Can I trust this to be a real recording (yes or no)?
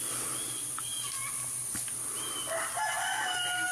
yes